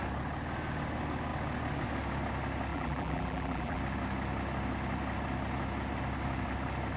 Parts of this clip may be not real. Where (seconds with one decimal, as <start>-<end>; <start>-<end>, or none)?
2.7-3.8